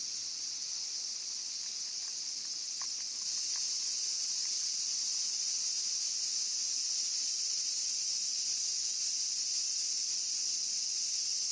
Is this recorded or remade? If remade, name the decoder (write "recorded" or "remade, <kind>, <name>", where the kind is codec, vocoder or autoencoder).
recorded